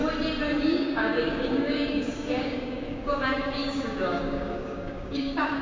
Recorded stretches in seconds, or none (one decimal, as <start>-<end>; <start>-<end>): 0.0-0.7